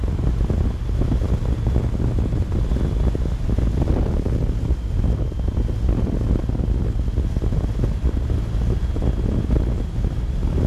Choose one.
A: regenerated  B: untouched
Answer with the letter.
B